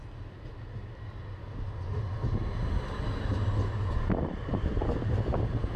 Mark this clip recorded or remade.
recorded